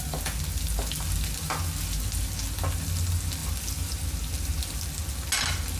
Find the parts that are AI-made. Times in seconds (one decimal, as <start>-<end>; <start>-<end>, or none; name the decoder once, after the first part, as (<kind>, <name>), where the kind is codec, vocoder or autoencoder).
none